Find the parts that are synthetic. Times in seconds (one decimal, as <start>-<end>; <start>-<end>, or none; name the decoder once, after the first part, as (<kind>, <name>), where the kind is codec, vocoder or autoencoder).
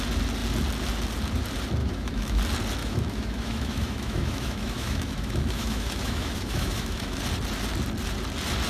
1.8-2.4 (autoencoder, DAC-VAE); 2.8-7.2